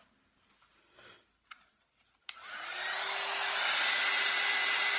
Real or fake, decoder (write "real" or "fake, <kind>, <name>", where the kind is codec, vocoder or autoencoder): real